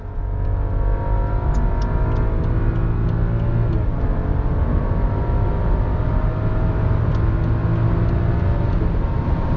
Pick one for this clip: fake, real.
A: real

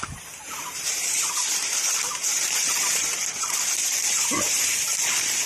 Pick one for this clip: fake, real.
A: fake